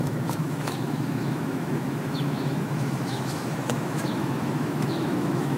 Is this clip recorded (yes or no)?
no